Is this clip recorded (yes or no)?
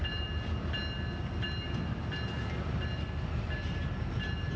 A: yes